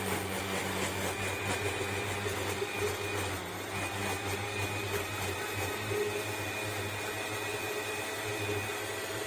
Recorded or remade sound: recorded